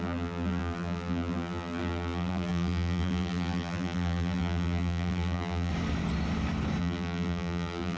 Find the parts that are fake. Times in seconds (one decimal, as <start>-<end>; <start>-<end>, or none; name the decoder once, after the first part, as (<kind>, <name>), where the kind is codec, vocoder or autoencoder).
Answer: 0.0-5.7 (vocoder, BigVGAN v2); 6.8-8.0